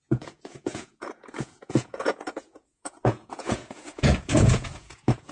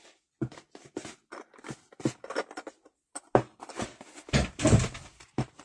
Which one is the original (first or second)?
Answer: second